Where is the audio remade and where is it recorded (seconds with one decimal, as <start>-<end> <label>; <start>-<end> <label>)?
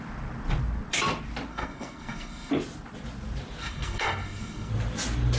0.0-1.5 recorded; 1.5-2.5 remade; 2.5-3.6 recorded; 3.6-4.7 remade; 4.7-5.4 recorded